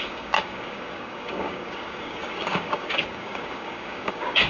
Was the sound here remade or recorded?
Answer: remade